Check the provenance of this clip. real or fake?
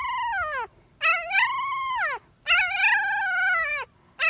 real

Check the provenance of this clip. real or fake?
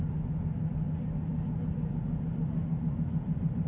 real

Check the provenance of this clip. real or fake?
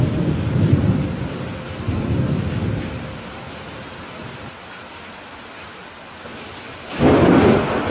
real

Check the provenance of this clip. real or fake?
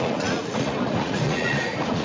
fake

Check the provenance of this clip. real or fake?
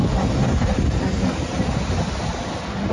real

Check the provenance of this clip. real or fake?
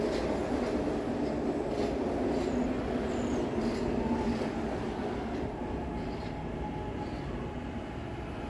real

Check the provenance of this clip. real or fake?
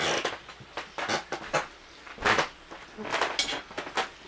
real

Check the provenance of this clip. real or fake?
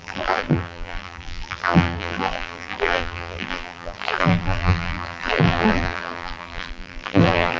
fake